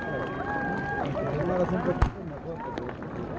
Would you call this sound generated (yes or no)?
no